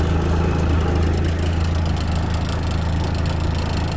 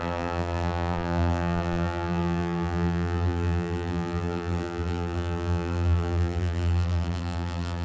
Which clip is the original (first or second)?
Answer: first